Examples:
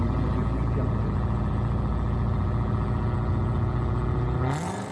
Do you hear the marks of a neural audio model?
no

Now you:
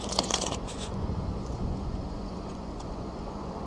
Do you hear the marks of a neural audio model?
yes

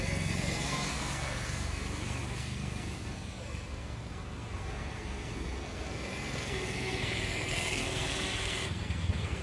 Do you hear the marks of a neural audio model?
yes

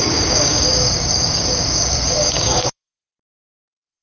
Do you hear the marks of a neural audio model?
yes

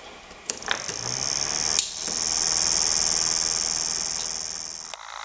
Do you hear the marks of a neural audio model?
no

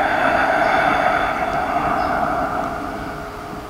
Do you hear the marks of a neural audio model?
no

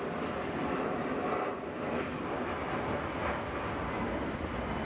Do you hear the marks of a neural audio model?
no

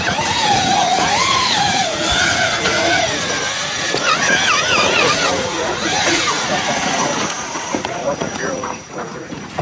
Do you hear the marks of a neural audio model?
yes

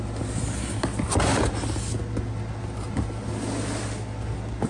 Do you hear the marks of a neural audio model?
no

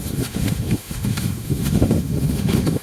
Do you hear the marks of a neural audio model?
yes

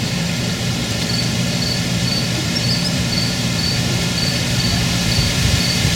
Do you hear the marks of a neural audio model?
yes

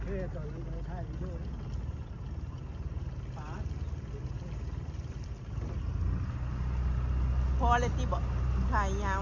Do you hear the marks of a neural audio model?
no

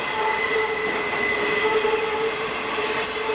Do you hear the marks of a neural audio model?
no